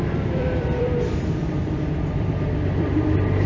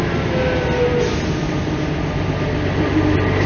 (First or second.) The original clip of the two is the second